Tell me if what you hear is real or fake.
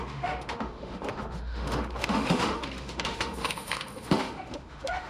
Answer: fake